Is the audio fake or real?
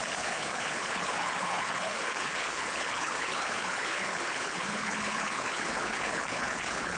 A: fake